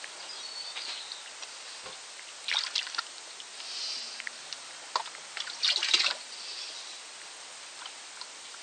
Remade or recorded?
recorded